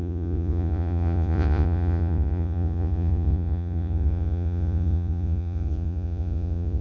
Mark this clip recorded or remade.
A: remade